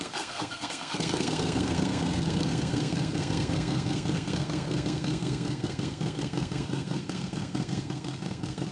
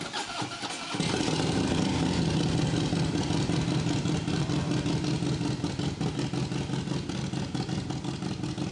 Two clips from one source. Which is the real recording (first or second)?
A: second